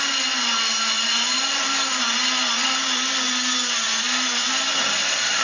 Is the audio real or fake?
real